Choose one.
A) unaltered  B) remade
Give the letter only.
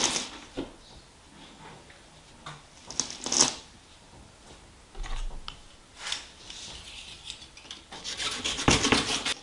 A